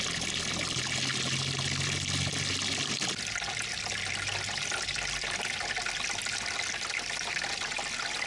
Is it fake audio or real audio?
real